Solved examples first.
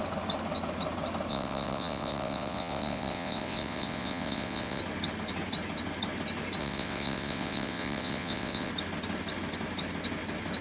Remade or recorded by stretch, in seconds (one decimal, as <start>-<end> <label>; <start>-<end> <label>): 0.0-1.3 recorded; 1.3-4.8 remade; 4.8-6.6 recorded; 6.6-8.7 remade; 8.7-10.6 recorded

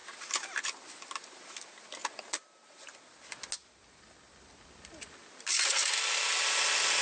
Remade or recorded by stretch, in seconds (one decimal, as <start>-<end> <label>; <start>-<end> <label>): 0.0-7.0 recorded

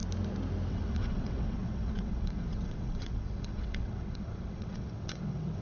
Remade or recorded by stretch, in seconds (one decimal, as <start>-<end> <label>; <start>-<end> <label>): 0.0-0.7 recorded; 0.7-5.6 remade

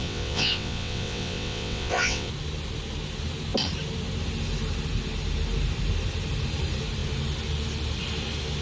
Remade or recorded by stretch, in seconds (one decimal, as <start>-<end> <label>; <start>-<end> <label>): 0.0-2.3 remade; 2.3-8.6 recorded